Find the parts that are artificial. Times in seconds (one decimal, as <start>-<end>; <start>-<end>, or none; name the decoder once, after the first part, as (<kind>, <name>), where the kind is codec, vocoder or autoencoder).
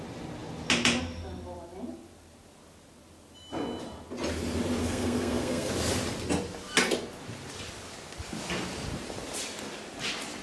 4.8-5.7 (codec, SNAC)